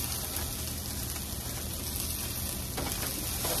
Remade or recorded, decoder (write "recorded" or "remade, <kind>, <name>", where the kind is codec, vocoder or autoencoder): recorded